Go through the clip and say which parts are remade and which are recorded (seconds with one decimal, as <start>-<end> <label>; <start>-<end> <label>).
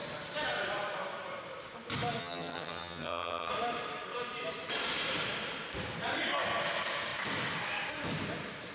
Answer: 0.0-2.2 recorded; 2.2-3.5 remade; 3.5-8.7 recorded